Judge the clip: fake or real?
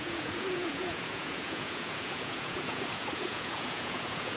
fake